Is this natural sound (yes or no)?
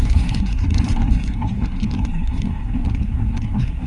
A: no